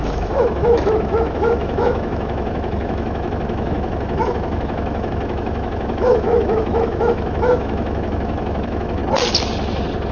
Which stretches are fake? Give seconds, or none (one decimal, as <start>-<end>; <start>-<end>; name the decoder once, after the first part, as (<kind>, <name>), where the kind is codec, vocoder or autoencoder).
0.0-9.0 (autoencoder, DAC-VAE)

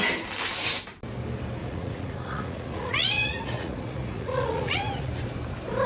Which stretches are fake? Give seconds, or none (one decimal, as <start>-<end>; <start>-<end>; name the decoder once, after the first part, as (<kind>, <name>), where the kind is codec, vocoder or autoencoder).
1.6-5.1 (vocoder, Vocos)

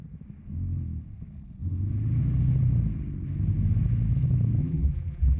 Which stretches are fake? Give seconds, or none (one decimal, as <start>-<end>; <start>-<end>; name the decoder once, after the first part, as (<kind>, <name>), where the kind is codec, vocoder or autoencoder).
4.6-5.4 (vocoder, BigVGAN v2)